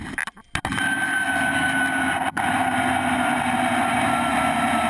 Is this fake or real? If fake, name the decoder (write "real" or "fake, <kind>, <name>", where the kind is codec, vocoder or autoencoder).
real